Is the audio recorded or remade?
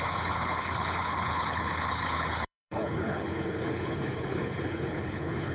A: remade